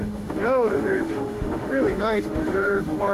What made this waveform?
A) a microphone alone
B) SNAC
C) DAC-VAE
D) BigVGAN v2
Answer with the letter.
C